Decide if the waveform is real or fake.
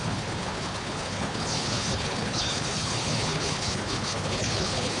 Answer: fake